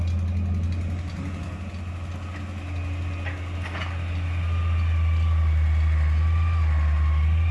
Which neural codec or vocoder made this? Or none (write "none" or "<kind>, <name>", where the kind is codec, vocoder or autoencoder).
none